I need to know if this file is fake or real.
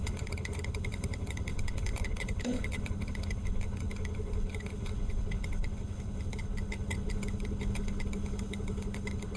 fake